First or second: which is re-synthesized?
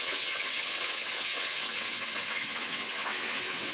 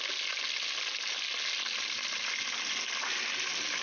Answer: first